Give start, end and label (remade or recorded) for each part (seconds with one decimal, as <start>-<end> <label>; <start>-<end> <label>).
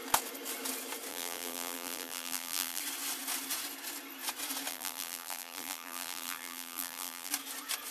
0.0-1.1 recorded; 1.1-2.8 remade; 2.8-4.7 recorded; 4.7-7.3 remade; 7.3-7.9 recorded